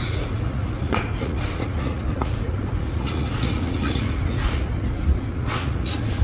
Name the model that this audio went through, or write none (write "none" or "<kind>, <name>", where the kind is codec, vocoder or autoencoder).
vocoder, Vocos